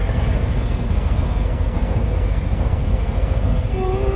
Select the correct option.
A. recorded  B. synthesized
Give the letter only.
B